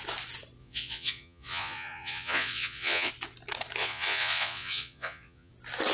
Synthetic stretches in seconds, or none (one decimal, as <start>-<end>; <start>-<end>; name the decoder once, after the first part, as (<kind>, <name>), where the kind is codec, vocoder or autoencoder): 0.6-3.1 (vocoder, Vocos); 3.8-5.5